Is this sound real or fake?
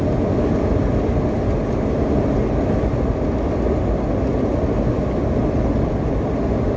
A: real